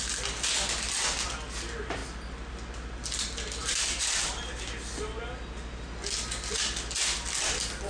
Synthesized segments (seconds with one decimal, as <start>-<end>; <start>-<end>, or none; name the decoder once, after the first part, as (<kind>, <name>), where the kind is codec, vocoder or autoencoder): 3.6-4.6 (vocoder, BigVGAN v2)